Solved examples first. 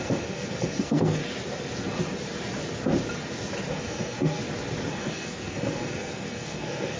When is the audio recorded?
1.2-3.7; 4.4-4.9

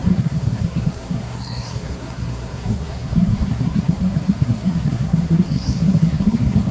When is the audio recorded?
none

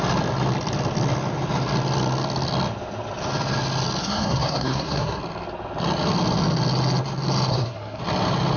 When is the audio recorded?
0.0-4.0; 5.2-7.5; 8.0-8.6

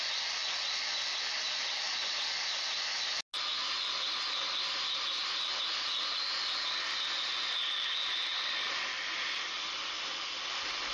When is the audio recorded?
0.0-10.9

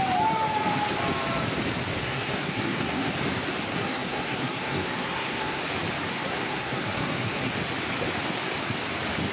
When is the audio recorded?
0.0-2.0; 3.1-3.7; 5.6-6.1; 7.5-9.3

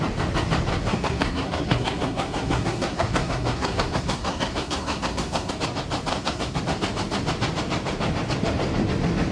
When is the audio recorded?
0.0-0.7; 5.5-6.1; 6.6-9.3

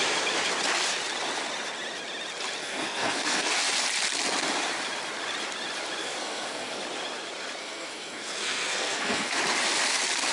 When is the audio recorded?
0.0-2.6; 3.5-6.0; 6.8-7.6; 9.4-10.3